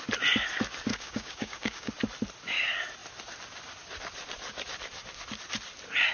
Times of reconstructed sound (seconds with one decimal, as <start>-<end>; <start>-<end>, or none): 0.9-1.9